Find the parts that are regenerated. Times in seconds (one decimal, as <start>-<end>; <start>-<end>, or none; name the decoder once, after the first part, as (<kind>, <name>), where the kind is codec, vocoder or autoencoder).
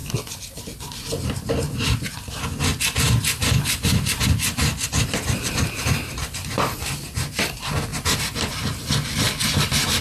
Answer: none